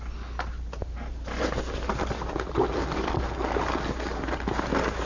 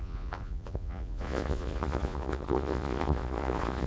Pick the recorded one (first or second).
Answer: first